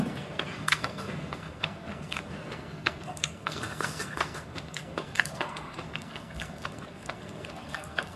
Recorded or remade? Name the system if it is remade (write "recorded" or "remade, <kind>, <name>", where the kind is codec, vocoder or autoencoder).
remade, codec, SNAC